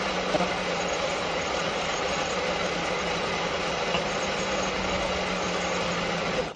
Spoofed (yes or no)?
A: no